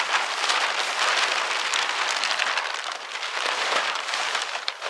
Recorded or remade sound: remade